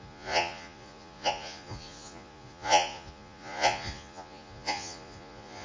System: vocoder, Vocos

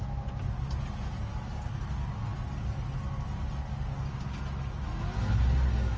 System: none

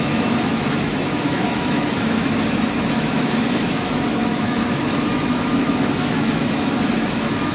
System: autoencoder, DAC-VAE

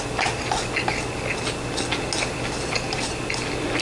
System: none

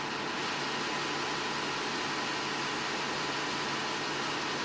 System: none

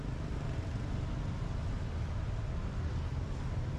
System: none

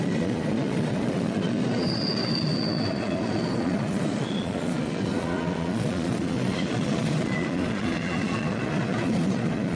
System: vocoder, Vocos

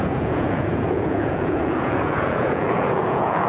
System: vocoder, Vocos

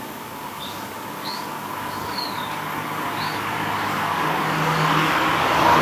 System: codec, DAC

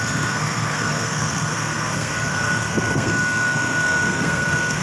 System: codec, SNAC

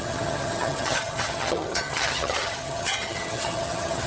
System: vocoder, HiFi-GAN